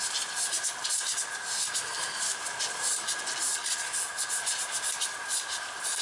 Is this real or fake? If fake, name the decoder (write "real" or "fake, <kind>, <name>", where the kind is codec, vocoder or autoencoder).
real